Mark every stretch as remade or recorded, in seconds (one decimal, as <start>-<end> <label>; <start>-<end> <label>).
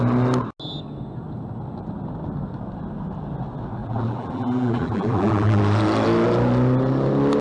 0.0-3.8 recorded; 3.8-5.6 remade; 5.6-7.4 recorded